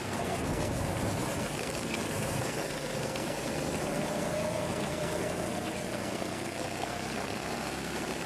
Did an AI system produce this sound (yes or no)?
yes